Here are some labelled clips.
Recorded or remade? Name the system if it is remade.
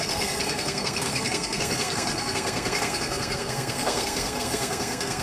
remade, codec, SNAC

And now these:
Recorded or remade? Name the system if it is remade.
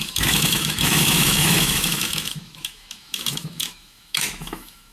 remade, autoencoder, DAC-VAE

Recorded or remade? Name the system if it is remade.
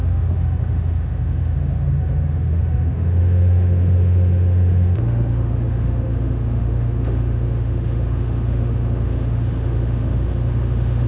remade, autoencoder, DAC-VAE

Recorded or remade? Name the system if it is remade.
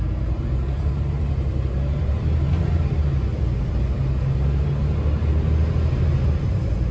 recorded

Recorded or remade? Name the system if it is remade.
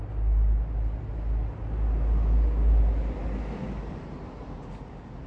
recorded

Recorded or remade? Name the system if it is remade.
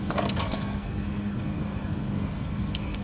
remade, codec, SNAC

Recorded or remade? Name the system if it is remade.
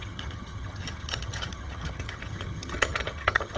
remade, vocoder, HiFi-GAN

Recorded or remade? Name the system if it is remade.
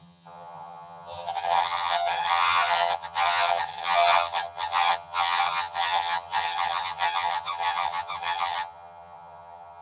remade, vocoder, HiFi-GAN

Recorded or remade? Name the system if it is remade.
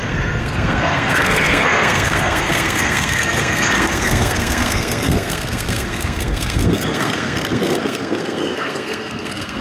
remade, codec, SNAC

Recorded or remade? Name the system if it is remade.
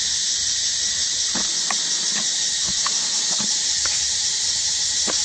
recorded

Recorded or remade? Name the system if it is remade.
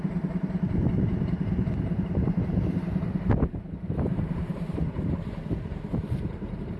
remade, vocoder, BigVGAN v2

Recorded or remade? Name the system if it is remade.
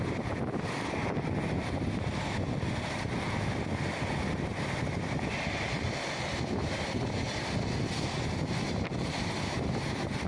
recorded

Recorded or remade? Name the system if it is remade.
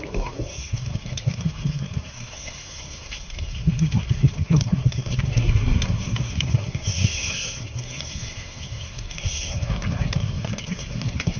remade, codec, SNAC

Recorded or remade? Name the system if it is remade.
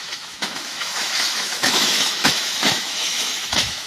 remade, autoencoder, DAC-VAE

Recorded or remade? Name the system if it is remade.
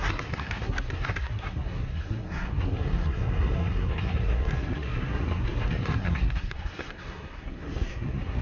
remade, codec, SNAC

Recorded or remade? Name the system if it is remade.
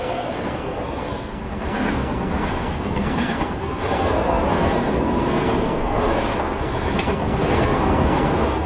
remade, codec, SNAC